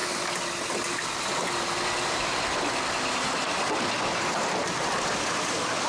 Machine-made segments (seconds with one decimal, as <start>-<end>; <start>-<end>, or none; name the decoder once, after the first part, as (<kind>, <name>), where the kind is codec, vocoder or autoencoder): none